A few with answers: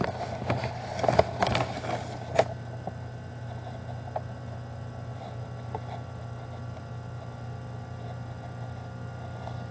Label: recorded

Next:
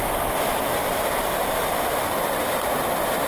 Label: recorded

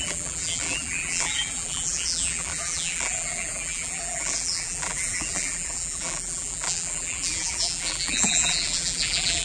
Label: remade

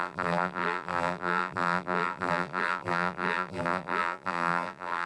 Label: remade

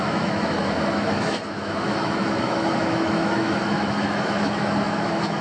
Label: remade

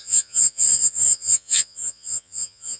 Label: remade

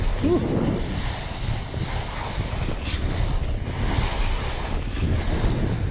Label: recorded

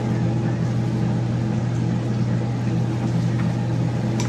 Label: recorded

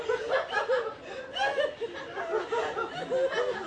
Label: recorded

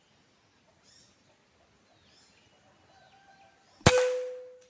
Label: recorded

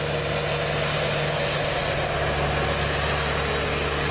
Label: recorded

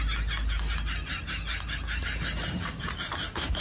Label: recorded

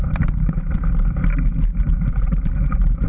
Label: remade